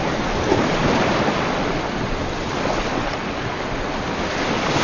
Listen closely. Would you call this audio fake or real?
real